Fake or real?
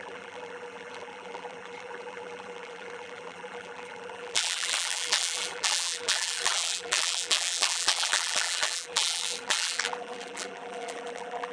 fake